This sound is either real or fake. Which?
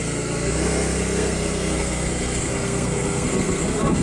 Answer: fake